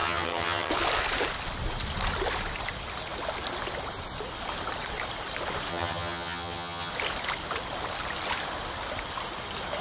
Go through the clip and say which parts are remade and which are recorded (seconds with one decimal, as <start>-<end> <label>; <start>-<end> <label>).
0.0-0.7 remade; 0.7-5.7 recorded; 5.7-6.9 remade; 6.9-9.8 recorded